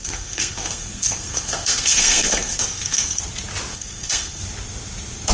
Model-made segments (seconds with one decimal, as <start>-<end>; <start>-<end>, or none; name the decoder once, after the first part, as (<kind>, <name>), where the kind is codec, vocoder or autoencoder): 0.0-3.2 (codec, SNAC); 3.7-4.4

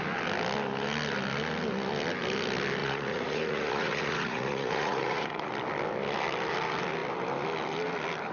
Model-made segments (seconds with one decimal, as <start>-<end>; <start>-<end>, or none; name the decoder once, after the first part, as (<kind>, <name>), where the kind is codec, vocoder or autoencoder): 2.8-5.5 (vocoder, Vocos)

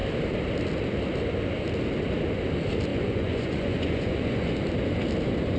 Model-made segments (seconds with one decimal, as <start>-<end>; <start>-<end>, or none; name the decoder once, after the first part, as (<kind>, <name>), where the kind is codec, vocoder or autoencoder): 2.9-4.5 (vocoder, Vocos)

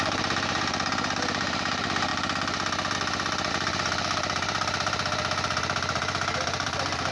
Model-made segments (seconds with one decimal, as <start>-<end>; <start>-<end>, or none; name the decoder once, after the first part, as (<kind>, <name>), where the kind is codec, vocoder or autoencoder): 0.0-2.1 (vocoder, BigVGAN v2); 3.5-7.1

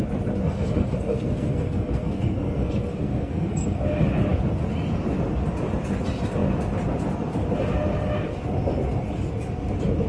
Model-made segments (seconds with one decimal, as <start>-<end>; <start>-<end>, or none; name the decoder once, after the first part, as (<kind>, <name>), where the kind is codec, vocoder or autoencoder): 0.4-3.8 (codec, SNAC)

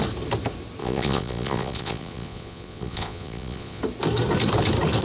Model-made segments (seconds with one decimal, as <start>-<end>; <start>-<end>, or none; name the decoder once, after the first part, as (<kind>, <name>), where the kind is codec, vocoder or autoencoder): 0.8-3.8 (vocoder, Vocos)

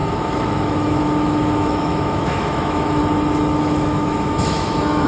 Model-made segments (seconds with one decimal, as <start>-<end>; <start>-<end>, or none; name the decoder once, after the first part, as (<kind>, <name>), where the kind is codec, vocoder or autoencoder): 0.0-3.0 (autoencoder, DAC-VAE); 3.6-5.1

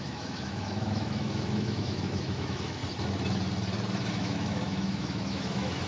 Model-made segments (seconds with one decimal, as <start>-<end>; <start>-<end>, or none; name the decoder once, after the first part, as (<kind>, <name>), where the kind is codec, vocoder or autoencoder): 0.0-2.8 (autoencoder, DAC-VAE); 4.1-5.9